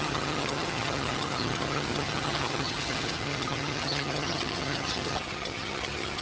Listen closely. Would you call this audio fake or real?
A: fake